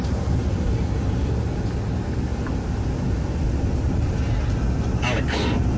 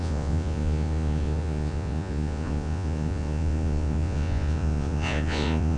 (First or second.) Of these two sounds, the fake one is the second